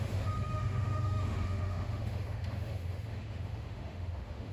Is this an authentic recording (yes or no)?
no